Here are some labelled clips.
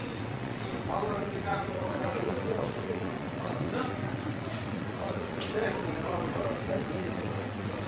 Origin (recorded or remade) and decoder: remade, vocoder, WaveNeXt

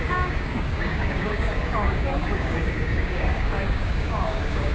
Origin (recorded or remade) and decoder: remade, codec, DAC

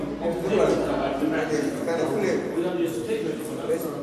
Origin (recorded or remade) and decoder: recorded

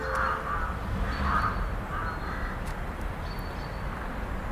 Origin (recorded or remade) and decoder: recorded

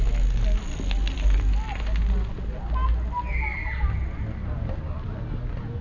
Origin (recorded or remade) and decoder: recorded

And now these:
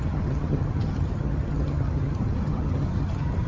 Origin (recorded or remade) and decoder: remade, vocoder, HiFi-GAN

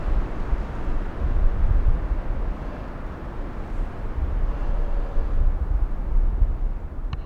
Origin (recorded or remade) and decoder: recorded